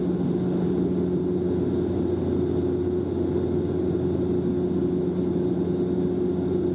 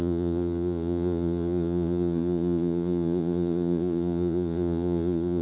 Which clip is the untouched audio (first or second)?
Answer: first